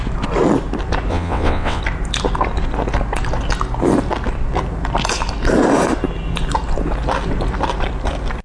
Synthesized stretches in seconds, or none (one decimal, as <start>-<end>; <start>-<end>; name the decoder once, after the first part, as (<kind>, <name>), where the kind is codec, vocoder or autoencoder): 1.1-1.8 (vocoder, WaveNeXt)